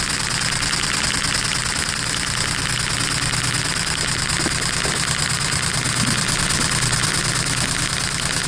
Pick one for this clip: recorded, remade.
recorded